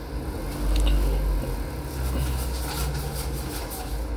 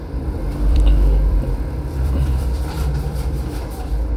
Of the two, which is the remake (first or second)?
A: second